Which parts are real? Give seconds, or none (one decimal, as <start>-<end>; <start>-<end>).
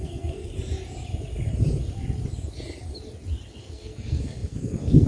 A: 0.5-3.6